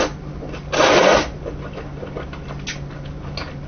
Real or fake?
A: real